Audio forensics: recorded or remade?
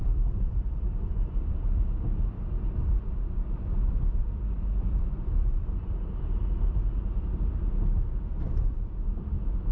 remade